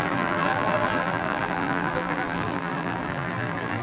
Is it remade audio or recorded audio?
remade